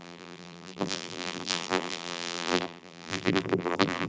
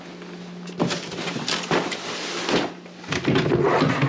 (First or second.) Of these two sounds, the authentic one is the second